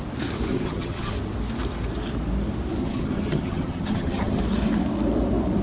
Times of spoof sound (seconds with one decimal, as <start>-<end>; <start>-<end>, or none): 0.5-1.1; 2.8-4.4